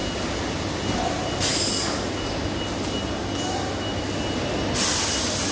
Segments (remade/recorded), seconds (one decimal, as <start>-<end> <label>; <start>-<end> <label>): 0.0-5.5 recorded